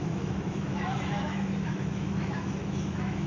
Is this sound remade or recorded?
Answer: remade